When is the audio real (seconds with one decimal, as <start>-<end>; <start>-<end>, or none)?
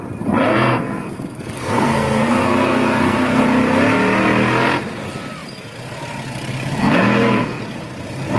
0.0-0.5; 3.4-6.8; 7.6-8.4